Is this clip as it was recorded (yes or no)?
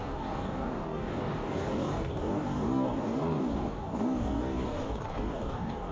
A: no